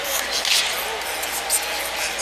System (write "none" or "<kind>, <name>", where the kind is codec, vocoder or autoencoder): none